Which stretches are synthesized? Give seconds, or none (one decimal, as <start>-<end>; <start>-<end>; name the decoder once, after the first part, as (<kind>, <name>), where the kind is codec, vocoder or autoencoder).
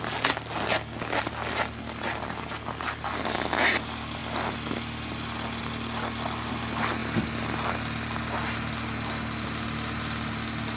none